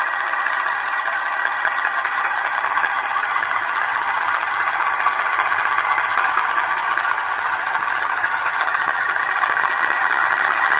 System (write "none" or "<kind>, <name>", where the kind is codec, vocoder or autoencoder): vocoder, HiFi-GAN